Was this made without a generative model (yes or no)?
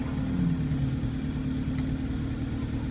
yes